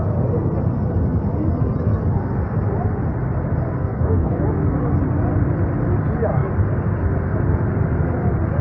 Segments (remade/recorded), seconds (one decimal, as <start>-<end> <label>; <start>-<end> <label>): 0.0-3.8 recorded; 3.8-4.4 remade; 4.4-8.6 recorded